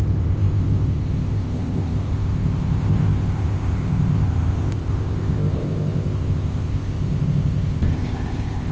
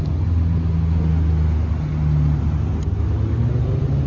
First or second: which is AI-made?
first